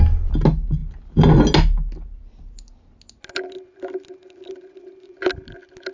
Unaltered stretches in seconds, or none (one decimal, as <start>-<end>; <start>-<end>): 0.0-5.9